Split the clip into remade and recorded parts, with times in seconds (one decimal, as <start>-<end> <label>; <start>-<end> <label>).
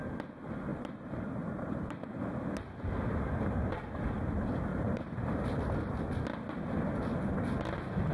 0.0-0.7 recorded; 0.7-2.3 remade; 2.3-4.7 recorded; 4.7-5.6 remade; 5.6-8.1 recorded